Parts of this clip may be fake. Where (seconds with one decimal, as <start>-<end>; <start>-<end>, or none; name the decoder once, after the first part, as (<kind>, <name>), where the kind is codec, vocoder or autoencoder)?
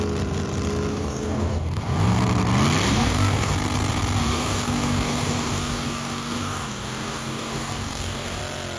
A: 0.9-2.2 (codec, DAC); 2.9-3.5; 4.3-8.4